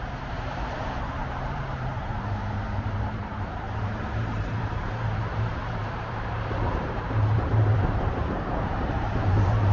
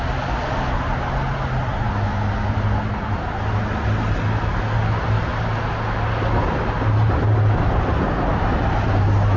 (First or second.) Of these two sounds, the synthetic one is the first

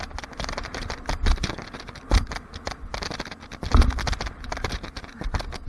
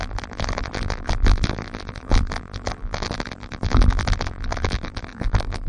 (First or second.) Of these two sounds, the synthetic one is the second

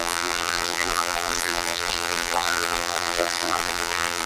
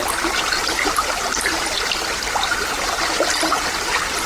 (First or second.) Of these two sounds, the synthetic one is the first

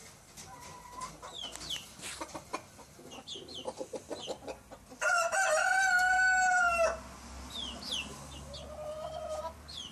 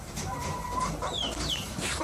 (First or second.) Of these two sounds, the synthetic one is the second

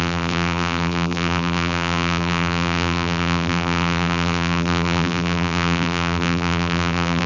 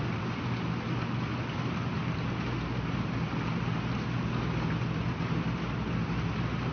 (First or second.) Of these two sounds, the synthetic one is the first